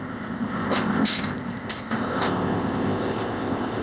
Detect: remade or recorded remade